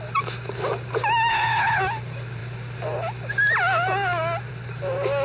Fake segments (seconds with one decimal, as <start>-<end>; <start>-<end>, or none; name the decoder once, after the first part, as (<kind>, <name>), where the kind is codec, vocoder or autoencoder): 1.3-1.8 (codec, HILCodec)